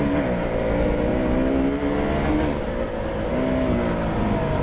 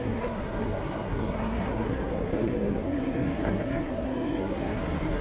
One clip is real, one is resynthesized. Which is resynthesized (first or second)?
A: second